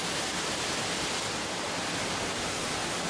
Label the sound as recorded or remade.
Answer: recorded